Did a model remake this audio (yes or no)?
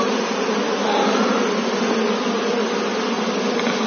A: no